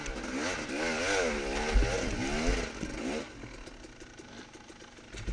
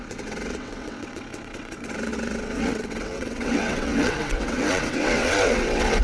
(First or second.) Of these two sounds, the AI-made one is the second